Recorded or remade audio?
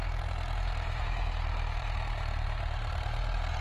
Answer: remade